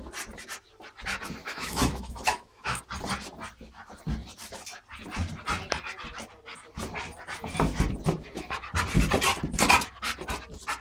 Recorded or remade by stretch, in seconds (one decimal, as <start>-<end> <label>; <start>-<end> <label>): 0.0-1.4 recorded; 1.4-2.8 remade; 2.8-10.8 recorded